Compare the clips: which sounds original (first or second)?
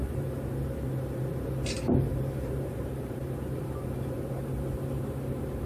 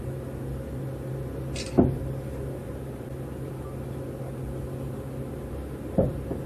second